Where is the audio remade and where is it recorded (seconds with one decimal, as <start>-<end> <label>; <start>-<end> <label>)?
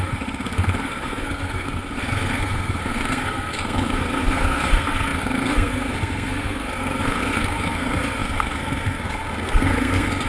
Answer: 0.0-10.3 remade